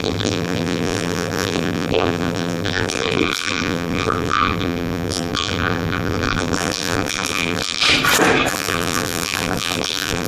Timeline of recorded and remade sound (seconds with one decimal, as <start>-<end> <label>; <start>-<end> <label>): 0.0-7.8 remade; 7.8-8.5 recorded; 8.5-10.3 remade